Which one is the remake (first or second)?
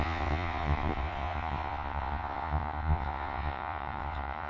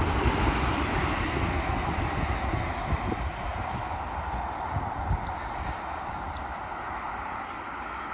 first